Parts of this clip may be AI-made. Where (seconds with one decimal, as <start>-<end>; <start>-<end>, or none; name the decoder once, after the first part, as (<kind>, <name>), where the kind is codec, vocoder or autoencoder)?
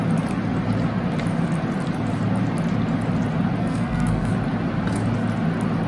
3.6-4.3 (codec, SNAC)